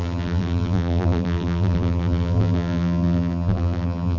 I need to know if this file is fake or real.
fake